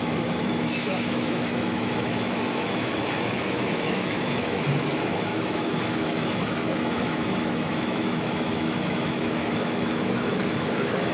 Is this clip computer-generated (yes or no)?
yes